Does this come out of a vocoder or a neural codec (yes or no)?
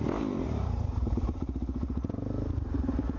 yes